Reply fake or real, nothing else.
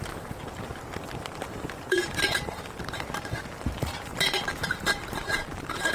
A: fake